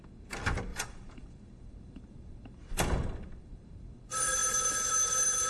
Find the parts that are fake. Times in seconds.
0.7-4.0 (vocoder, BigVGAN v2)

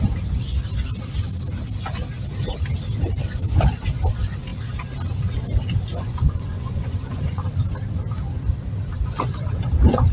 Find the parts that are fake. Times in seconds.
5.9-7.5 (vocoder, Vocos)

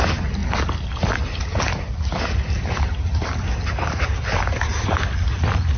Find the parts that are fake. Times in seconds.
none

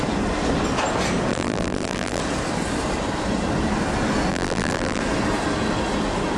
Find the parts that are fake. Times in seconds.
1.3-2.2 (vocoder, BigVGAN v2); 4.3-5.0